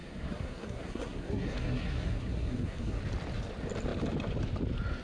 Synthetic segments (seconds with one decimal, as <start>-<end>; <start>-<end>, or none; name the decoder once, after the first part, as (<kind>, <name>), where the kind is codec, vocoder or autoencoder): 0.0-3.0 (codec, SNAC)